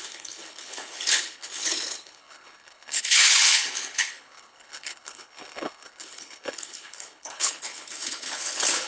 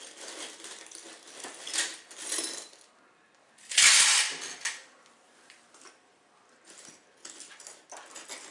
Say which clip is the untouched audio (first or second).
second